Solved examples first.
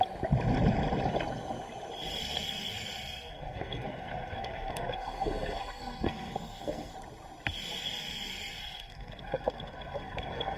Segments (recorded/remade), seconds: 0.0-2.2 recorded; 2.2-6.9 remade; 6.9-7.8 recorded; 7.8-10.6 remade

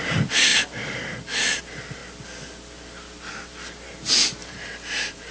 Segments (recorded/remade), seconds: 0.0-4.4 recorded; 4.4-5.3 remade